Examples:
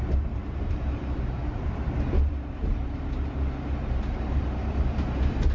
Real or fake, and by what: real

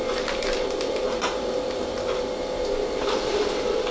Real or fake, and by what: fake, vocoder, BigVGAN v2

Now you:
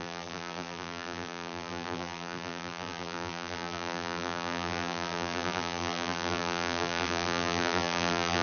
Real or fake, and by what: fake, vocoder, BigVGAN v2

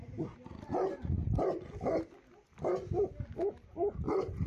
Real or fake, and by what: real